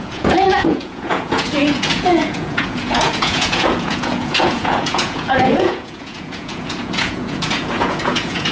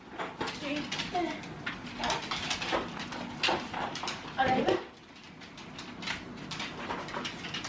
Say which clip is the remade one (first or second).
first